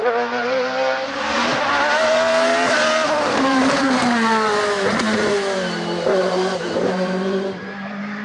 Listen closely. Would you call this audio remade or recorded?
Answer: remade